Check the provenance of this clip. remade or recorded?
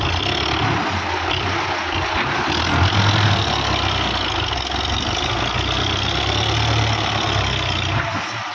recorded